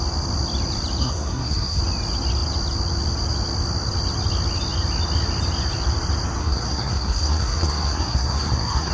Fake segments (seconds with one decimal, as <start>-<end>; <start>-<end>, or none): 1.0-1.8; 6.4-8.9